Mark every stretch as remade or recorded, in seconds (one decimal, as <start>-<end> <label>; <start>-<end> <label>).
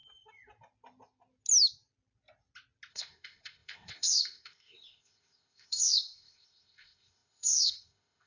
0.0-2.9 recorded; 2.9-8.3 remade